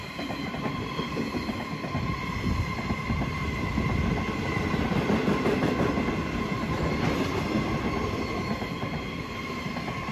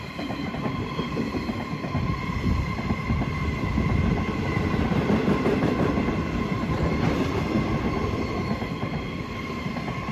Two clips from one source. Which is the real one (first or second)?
first